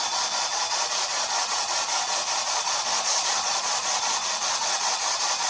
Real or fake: fake